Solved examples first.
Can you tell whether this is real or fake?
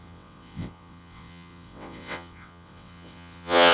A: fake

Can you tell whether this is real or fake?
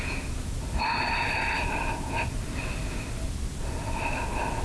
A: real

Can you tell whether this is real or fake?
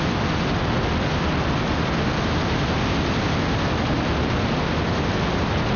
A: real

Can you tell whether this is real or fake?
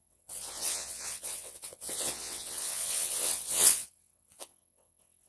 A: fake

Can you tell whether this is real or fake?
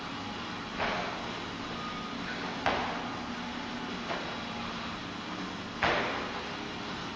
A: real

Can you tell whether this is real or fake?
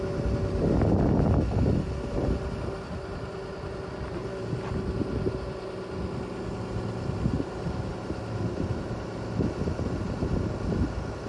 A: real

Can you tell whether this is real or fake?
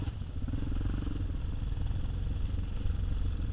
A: real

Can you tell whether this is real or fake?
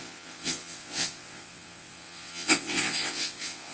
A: fake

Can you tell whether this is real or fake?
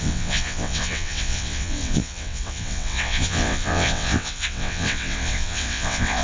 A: fake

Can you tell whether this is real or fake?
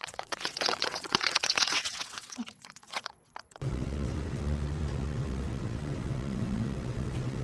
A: fake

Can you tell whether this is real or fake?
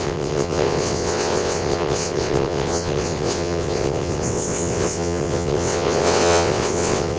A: fake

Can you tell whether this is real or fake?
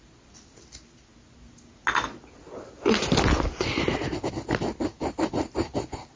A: real